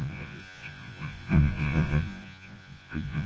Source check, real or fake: fake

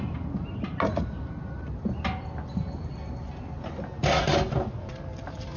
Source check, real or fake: real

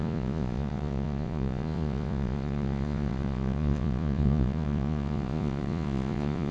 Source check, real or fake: fake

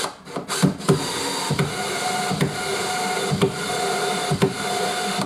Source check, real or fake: real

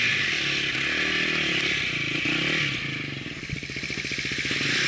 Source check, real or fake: real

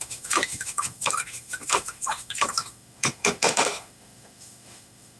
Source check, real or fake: fake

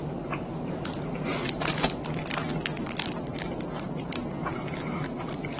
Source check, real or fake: fake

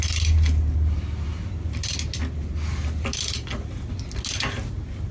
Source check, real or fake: real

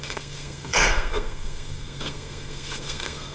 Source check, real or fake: fake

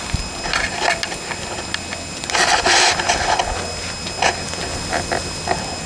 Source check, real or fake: real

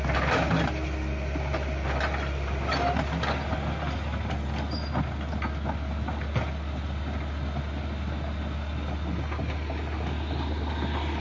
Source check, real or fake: real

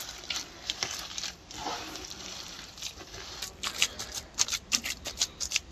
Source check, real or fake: fake